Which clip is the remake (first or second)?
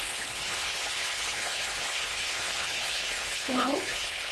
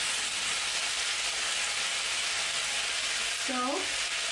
first